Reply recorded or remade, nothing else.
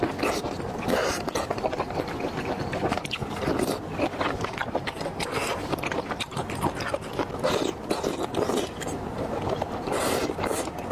remade